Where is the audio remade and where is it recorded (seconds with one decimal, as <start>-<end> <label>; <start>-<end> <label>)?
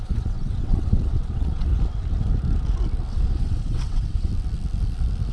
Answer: 0.0-1.7 remade; 1.7-3.1 recorded; 3.1-4.3 remade; 4.3-5.3 recorded